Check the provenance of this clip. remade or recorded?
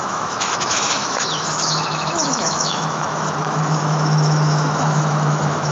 remade